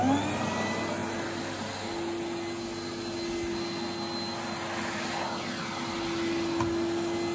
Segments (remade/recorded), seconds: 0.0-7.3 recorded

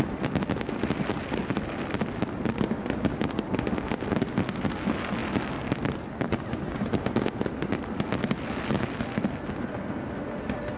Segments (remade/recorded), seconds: 0.0-10.8 recorded

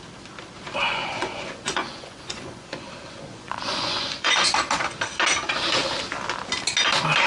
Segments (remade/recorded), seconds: 0.0-0.8 recorded; 0.8-4.6 remade; 4.6-7.3 recorded

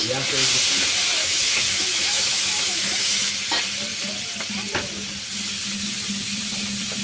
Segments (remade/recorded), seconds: 0.0-1.2 recorded; 1.2-3.3 remade; 3.3-7.0 recorded

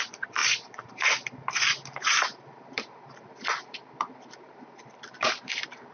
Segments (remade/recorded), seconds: 0.0-5.9 remade

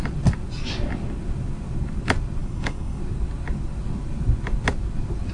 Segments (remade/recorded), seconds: 0.0-2.4 recorded; 2.4-3.0 remade; 3.0-5.3 recorded

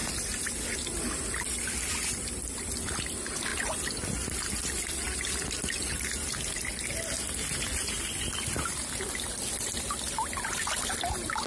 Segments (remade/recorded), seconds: 0.0-11.5 recorded